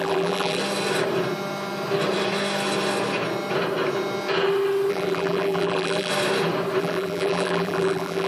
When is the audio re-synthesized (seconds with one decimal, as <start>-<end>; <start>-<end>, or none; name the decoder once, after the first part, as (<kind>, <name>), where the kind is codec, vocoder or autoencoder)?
0.0-0.6 (vocoder, BigVGAN v2); 4.9-6.1; 6.8-8.3

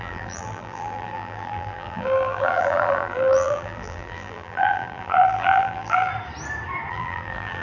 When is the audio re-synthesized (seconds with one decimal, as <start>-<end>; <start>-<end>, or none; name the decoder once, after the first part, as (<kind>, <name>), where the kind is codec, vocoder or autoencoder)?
0.0-6.1 (vocoder, BigVGAN v2); 6.9-7.6

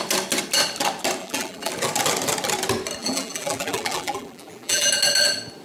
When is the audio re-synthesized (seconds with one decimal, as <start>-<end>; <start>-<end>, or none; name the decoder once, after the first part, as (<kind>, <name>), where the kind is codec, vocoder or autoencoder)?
1.2-1.7 (vocoder, BigVGAN v2); 3.0-4.9

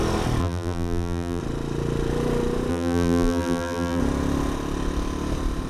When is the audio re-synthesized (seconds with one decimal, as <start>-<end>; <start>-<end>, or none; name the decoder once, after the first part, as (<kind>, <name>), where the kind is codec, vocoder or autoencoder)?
0.4-1.4 (vocoder, BigVGAN v2); 2.7-4.0

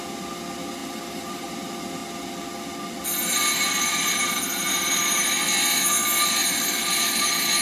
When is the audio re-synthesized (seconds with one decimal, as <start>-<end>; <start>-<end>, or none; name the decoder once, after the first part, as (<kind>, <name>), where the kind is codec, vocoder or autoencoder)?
0.8-1.5 (vocoder, BigVGAN v2); 3.2-5.0

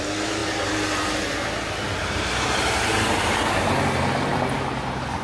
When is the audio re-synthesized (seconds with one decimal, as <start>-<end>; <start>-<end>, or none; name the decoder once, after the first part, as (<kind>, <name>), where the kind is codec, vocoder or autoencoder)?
0.4-3.5 (vocoder, BigVGAN v2)